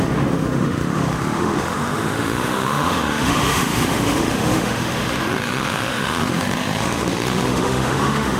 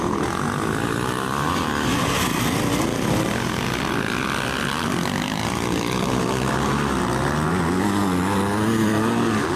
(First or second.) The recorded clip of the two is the second